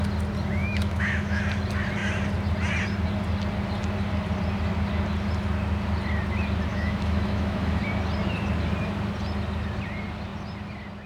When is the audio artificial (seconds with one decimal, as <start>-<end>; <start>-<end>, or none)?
0.6-1.4; 6.7-7.8